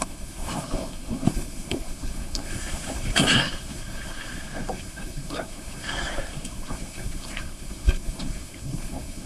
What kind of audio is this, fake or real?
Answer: fake